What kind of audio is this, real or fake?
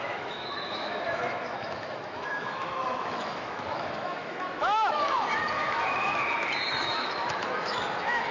fake